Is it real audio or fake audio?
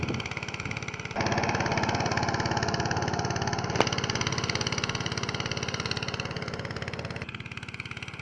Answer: real